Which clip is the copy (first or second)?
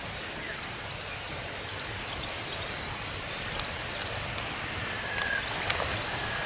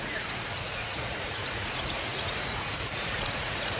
second